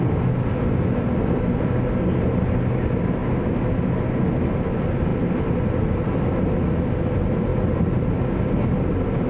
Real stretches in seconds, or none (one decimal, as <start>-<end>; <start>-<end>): 0.0-9.3